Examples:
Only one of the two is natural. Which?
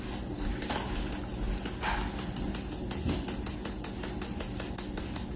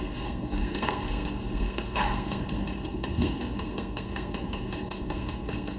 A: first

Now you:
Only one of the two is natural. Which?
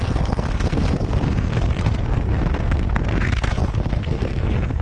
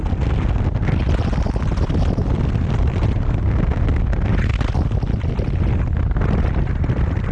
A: second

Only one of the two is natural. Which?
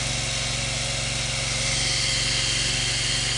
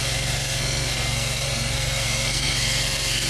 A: first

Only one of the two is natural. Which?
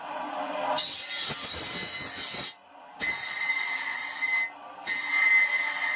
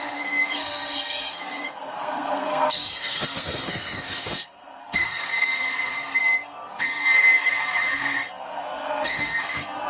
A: first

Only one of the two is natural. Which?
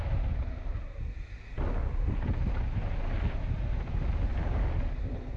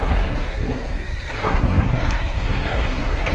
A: first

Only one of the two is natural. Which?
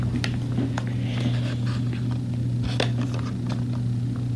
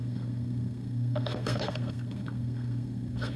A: first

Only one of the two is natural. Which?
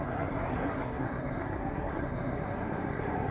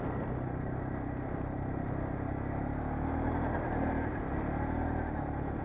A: second